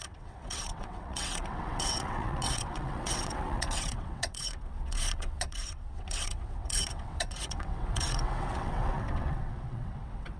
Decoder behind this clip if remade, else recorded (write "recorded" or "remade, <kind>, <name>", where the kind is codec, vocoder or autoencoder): remade, vocoder, WaveNeXt